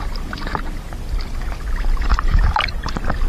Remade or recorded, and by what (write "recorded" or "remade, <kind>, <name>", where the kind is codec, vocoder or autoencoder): recorded